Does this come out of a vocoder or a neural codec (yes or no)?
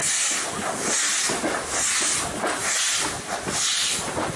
no